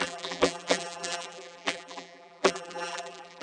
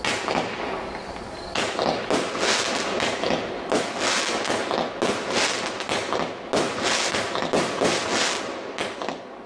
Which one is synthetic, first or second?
first